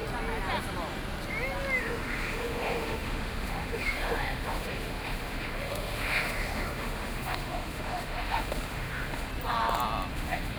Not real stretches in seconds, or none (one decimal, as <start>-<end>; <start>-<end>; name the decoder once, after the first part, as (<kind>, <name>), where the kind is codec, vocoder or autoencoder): 1.8-9.3 (autoencoder, DAC-VAE); 10.1-10.6